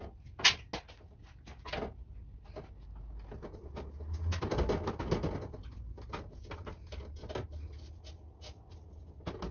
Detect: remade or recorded recorded